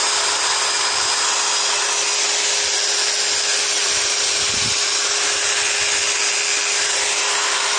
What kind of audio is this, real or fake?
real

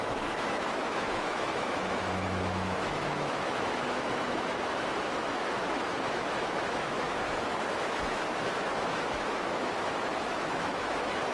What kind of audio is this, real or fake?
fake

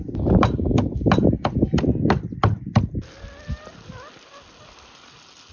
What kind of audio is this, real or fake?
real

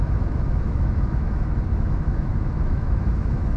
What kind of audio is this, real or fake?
fake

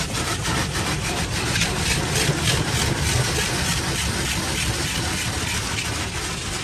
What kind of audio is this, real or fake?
real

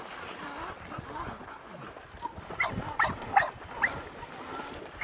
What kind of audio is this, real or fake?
real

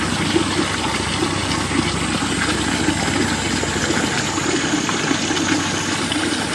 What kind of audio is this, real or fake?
real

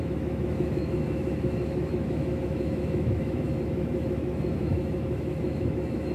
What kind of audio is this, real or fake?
fake